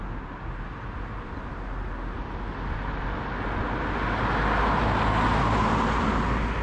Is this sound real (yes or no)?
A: yes